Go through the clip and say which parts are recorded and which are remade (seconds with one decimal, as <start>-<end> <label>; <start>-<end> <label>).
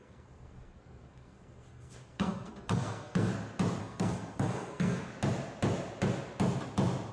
0.0-3.3 remade; 3.3-3.8 recorded; 3.8-5.1 remade; 5.1-7.1 recorded